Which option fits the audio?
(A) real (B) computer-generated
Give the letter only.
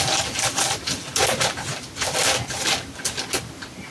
A